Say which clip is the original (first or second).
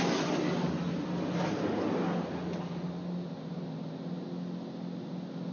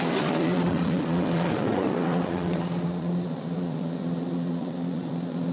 first